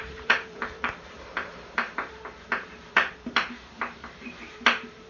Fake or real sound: fake